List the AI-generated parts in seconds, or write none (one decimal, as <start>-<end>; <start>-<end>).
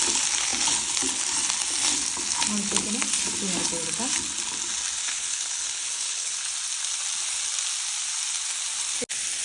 5.0-6.4